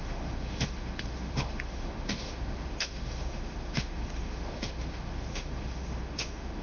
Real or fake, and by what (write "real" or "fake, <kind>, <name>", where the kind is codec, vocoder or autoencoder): fake, autoencoder, DAC-VAE